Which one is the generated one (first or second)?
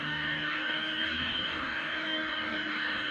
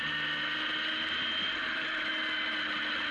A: first